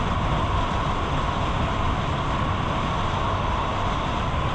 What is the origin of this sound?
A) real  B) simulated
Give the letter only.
A